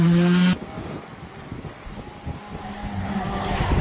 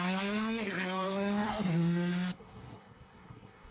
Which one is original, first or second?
first